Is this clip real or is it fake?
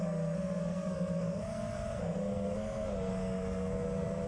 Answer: fake